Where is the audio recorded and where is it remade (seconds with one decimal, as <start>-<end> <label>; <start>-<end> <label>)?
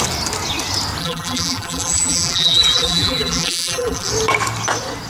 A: 0.0-1.0 recorded; 1.0-4.1 remade; 4.1-5.1 recorded